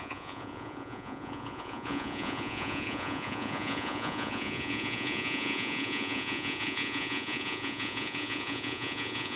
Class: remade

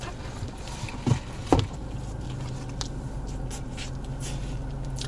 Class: recorded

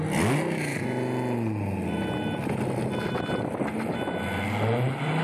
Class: recorded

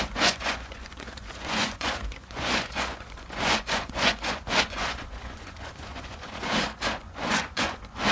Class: remade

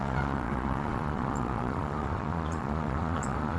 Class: remade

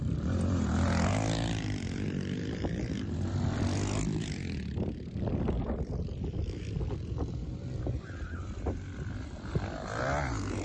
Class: recorded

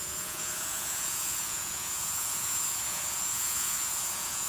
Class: remade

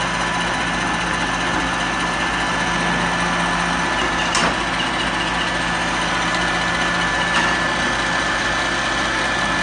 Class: recorded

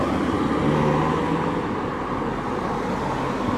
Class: recorded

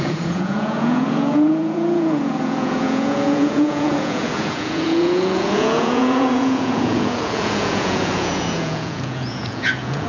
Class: remade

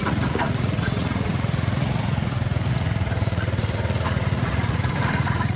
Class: remade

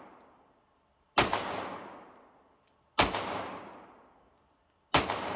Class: recorded